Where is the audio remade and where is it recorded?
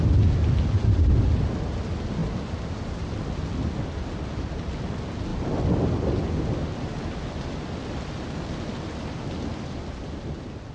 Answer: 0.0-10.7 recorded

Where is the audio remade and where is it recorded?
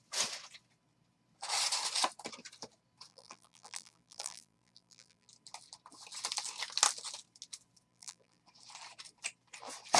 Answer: 0.0-3.1 recorded; 3.1-5.3 remade; 5.3-7.9 recorded; 7.9-8.4 remade; 8.4-10.0 recorded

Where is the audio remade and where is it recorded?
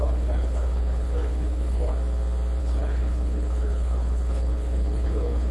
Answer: 0.0-1.9 remade; 1.9-2.6 recorded; 2.6-5.5 remade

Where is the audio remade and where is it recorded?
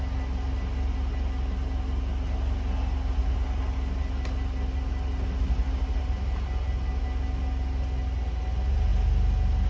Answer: 0.0-9.7 recorded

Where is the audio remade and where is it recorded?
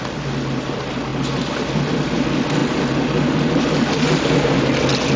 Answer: 0.0-5.2 recorded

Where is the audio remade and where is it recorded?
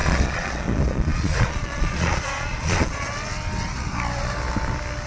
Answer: 0.0-3.1 remade; 3.1-5.1 recorded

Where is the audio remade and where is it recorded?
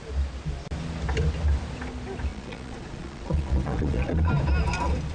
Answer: 0.0-2.3 recorded; 2.3-4.3 remade; 4.3-5.1 recorded